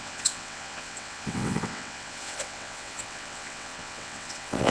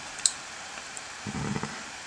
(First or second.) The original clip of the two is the second